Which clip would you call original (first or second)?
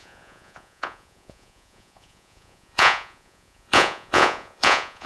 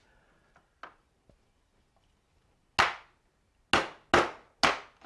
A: second